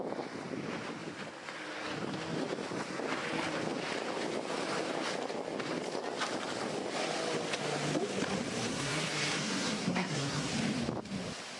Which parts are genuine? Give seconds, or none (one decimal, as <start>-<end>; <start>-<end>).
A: 0.0-8.7; 10.5-11.6